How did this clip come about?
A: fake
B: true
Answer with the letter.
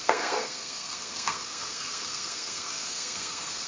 A